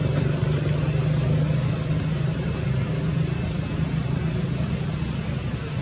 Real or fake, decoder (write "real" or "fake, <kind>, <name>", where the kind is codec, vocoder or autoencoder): real